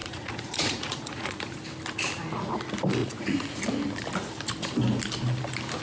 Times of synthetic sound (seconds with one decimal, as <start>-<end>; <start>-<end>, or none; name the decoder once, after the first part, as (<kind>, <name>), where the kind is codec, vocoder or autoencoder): 0.0-1.6 (vocoder, Vocos); 3.0-3.6